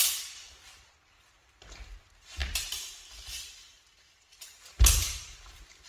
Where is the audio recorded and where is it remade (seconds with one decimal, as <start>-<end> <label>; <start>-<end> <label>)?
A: 0.0-5.9 remade